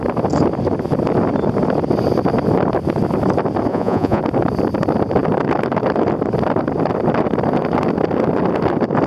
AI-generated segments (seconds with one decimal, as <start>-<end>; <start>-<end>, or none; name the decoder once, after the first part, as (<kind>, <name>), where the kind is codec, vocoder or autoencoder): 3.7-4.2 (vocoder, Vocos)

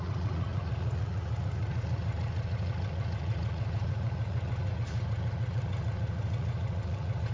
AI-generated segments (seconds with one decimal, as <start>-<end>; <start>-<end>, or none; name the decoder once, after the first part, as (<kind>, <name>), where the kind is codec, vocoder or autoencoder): 0.0-7.3 (vocoder, Vocos)

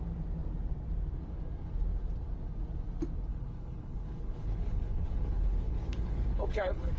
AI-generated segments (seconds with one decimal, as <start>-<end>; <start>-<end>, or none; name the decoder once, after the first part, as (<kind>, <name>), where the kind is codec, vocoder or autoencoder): 3.3-7.0 (codec, HILCodec)

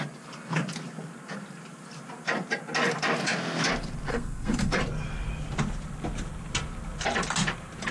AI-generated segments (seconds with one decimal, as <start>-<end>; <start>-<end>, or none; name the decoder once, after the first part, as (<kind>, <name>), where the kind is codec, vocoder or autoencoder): 4.1-4.8 (codec, SNAC)

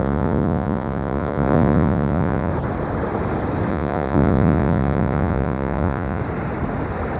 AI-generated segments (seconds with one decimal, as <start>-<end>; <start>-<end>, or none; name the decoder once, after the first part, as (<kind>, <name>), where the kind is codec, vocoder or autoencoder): 0.0-2.5 (vocoder, Vocos); 3.7-6.2

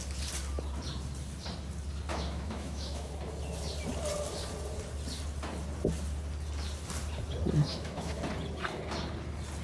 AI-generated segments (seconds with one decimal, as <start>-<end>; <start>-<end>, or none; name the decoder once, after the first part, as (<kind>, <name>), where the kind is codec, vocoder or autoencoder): 2.1-3.1 (autoencoder, DAC-VAE); 7.7-8.2

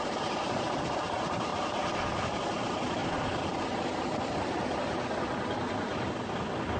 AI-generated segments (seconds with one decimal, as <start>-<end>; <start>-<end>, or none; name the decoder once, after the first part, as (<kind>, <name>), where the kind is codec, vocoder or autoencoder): none